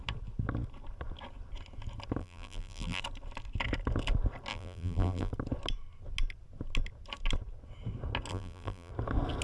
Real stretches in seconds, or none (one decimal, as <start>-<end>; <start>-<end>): 0.0-2.2; 3.0-4.5; 5.3-8.3; 8.9-9.4